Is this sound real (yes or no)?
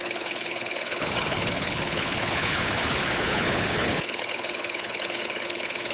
no